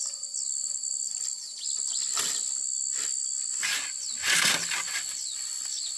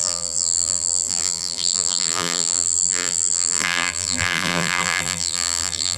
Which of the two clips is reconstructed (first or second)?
second